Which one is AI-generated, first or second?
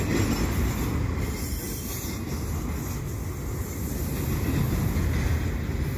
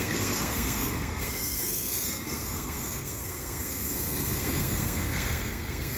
second